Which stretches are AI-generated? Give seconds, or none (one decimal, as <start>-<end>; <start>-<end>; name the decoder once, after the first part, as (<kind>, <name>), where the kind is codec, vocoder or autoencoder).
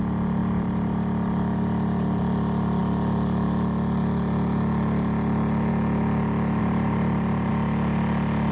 0.4-2.2 (vocoder, BigVGAN v2); 6.6-7.5